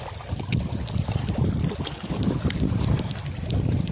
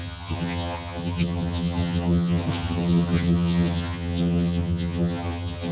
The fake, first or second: second